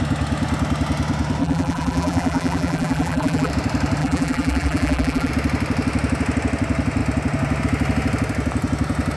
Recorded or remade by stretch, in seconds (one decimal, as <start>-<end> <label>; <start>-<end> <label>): 0.0-1.4 recorded; 1.4-3.5 remade; 3.5-4.0 recorded; 4.0-5.3 remade; 5.3-9.2 recorded